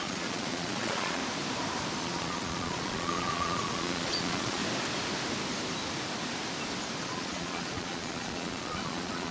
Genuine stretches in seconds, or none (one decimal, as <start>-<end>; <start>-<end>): 1.2-2.0; 4.6-7.0